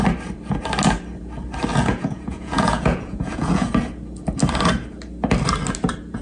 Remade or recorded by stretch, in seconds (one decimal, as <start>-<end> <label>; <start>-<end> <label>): 0.0-1.7 recorded; 1.7-3.7 remade; 3.7-6.2 recorded